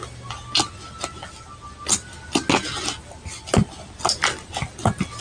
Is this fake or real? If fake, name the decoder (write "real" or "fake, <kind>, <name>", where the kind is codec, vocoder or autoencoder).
real